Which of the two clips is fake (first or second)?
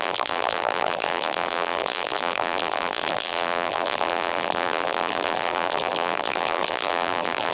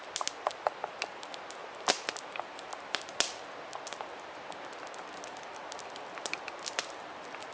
first